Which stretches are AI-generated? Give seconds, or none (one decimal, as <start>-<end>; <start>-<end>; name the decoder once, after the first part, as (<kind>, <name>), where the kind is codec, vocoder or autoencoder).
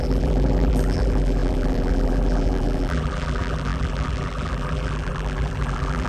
0.0-6.1 (vocoder, BigVGAN v2)